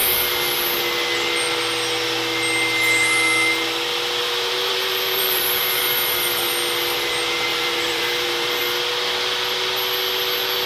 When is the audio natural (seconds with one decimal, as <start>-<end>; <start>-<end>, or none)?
0.0-4.2; 5.8-7.5; 8.6-10.7